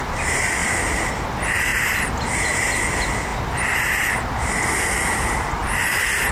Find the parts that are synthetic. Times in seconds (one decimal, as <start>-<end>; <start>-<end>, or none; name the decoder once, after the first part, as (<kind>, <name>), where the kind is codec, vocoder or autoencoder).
0.6-1.1 (vocoder, BigVGAN v2); 1.7-2.4; 3.3-4.1; 5.6-6.3